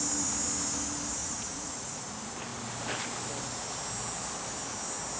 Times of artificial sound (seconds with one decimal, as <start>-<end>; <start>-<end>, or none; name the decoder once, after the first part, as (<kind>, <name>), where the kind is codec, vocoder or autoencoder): 1.2-2.0 (vocoder, Vocos)